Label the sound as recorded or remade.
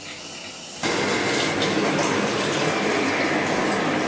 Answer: recorded